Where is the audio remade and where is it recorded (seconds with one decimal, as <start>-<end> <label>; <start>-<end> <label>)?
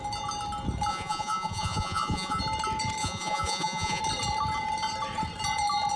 0.0-0.9 recorded; 0.9-2.4 remade; 2.4-3.0 recorded; 3.0-4.0 remade; 4.0-6.0 recorded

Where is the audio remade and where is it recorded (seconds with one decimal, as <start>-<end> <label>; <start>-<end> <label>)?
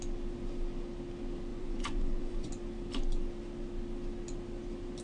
0.0-1.5 recorded; 1.5-2.5 remade; 2.5-5.0 recorded